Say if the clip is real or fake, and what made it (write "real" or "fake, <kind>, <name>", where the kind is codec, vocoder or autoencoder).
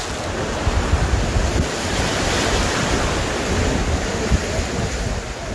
real